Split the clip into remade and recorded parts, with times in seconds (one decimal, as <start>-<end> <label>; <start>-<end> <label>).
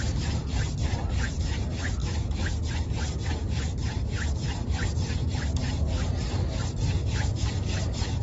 0.0-8.2 recorded